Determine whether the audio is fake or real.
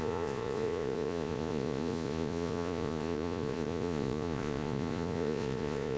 fake